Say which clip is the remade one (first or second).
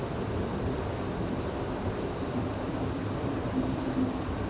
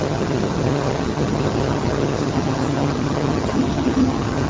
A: second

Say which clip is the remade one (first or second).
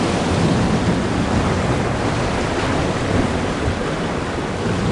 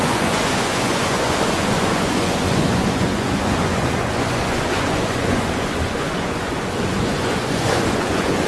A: second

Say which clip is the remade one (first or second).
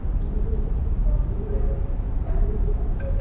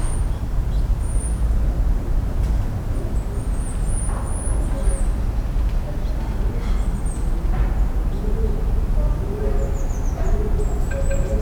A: first